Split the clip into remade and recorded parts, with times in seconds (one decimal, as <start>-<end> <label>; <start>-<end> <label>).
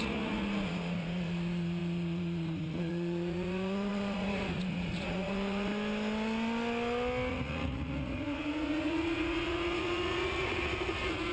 0.0-5.7 remade; 5.7-7.3 recorded; 7.3-11.3 remade